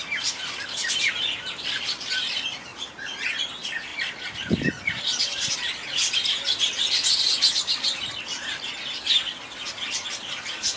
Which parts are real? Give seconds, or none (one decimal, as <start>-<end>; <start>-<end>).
0.0-10.8

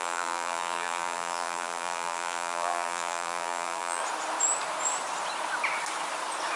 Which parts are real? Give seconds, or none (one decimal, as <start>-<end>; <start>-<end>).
4.0-6.6

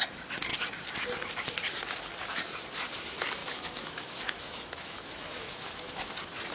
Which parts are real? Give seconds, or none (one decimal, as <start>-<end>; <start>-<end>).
0.0-3.4; 6.0-6.5

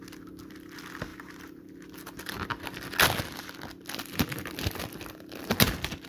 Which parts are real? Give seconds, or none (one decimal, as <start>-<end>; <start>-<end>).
0.0-1.1; 1.6-6.1